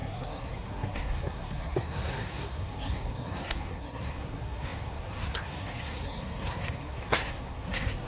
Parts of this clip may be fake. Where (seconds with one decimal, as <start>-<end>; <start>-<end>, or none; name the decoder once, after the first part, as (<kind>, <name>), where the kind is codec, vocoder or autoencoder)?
0.0-8.1 (codec, SNAC)

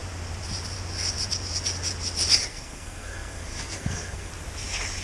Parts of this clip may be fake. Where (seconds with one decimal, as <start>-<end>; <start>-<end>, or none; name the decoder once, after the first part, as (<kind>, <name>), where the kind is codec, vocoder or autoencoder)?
2.5-4.3 (codec, SNAC)